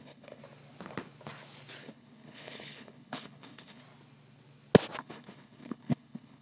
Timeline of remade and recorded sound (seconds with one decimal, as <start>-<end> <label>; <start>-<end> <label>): 0.0-0.4 remade; 0.4-1.8 recorded; 1.8-3.8 remade; 3.8-5.0 recorded; 5.0-6.4 remade